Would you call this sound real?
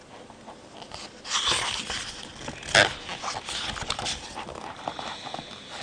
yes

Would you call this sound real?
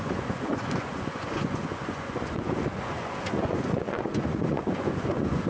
no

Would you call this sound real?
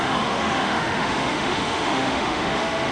no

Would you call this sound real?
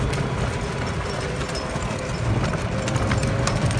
yes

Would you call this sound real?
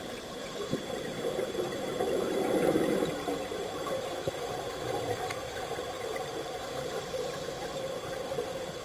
no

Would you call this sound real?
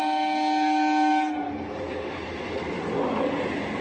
yes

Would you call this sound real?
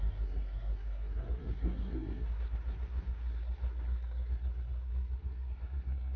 no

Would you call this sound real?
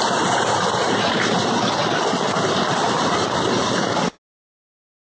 yes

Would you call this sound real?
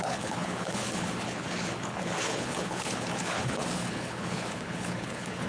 no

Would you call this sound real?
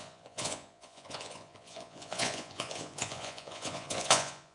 no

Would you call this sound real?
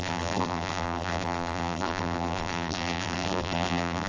no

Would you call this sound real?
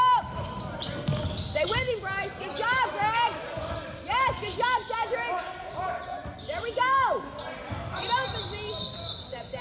yes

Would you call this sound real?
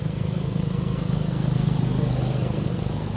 no